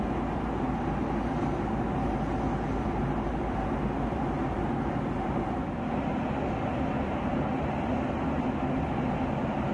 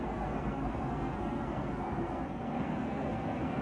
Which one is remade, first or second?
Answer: second